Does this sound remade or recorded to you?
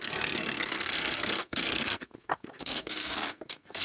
remade